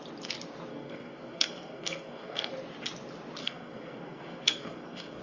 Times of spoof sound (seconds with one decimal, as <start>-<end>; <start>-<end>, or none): 0.7-2.5; 3.4-5.2